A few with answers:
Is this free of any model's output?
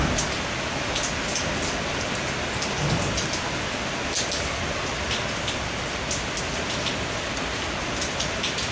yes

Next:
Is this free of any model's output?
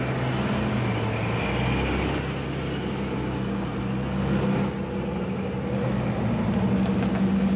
yes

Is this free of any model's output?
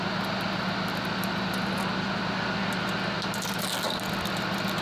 yes